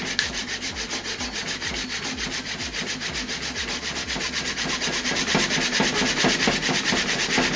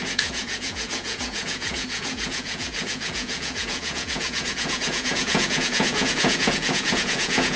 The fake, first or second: second